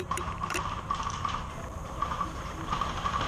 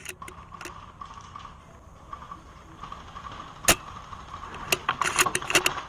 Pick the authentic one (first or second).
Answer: second